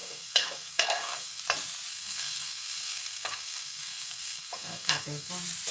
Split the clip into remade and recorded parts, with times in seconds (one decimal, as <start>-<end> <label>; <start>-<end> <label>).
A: 0.0-1.4 remade; 1.4-1.9 recorded; 1.9-5.3 remade; 5.3-5.7 recorded